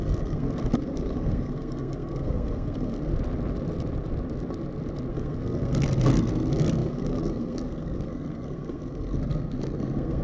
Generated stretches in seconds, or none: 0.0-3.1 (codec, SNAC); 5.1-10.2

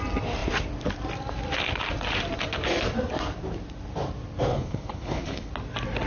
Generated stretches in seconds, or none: 4.5-5.5 (codec, HILCodec)

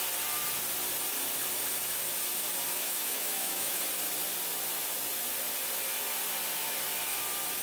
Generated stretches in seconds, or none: 2.7-3.8 (autoencoder, DAC-VAE)